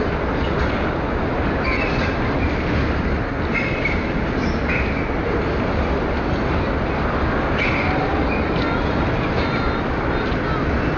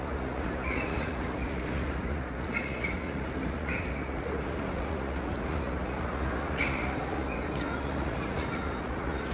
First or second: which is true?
first